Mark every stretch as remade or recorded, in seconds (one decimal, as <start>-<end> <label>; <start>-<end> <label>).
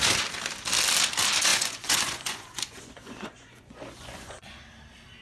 0.0-1.5 recorded; 1.5-4.6 remade; 4.6-5.2 recorded